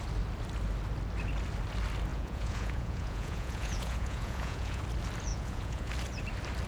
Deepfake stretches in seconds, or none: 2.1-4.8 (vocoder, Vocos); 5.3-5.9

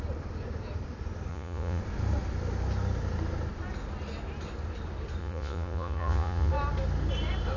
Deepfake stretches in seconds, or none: 1.3-1.8 (vocoder, Vocos); 5.2-6.5